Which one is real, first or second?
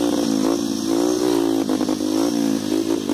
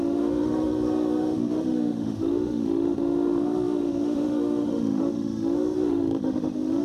first